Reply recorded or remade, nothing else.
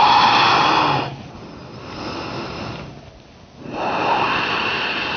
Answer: recorded